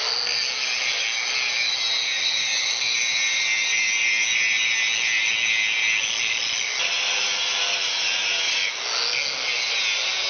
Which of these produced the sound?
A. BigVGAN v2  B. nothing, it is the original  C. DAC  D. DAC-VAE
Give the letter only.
B